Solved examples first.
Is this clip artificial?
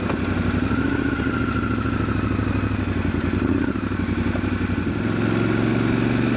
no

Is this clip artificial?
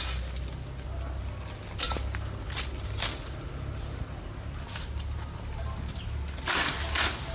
no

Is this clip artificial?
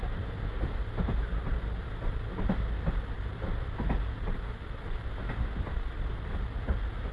no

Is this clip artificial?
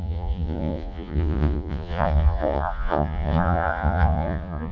yes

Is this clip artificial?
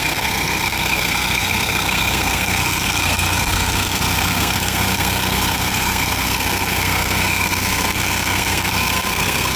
yes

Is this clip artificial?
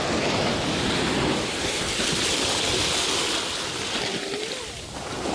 no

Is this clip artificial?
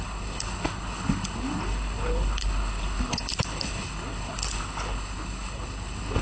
yes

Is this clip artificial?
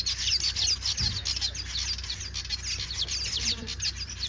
no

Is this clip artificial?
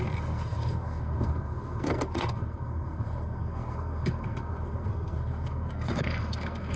yes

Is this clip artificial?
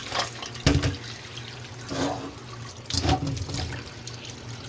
no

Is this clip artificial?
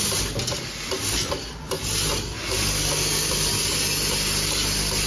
no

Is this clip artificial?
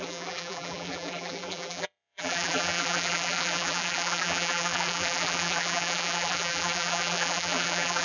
yes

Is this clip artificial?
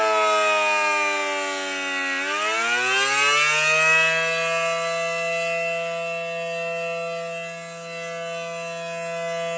no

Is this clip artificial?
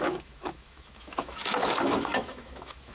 yes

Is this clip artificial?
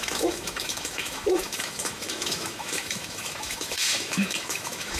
yes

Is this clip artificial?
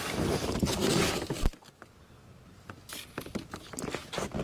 no